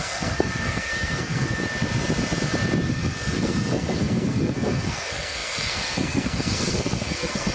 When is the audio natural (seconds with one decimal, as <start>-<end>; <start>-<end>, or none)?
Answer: 1.6-2.9